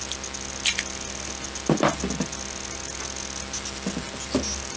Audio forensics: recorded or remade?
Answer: recorded